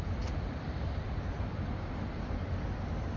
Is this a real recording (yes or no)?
yes